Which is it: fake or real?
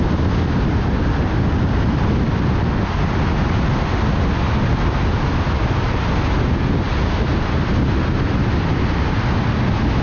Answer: real